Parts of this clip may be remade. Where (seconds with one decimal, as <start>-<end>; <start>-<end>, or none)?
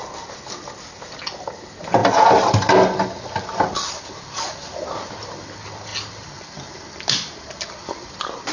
none